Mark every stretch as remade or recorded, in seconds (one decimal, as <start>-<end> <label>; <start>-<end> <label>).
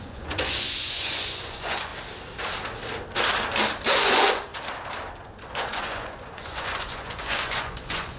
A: 0.0-1.9 remade; 1.9-4.0 recorded; 4.0-4.5 remade; 4.5-5.2 recorded; 5.2-8.2 remade